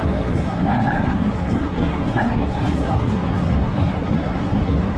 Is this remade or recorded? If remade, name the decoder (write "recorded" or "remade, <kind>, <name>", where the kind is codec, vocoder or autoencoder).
remade, codec, SNAC